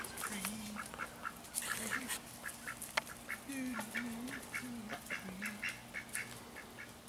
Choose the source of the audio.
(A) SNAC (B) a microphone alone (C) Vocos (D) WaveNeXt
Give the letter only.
B